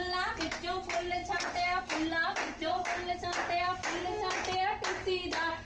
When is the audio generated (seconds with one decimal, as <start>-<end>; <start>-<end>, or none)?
0.0-4.0; 4.9-5.6